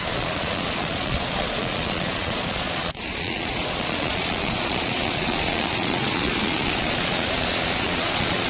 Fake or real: fake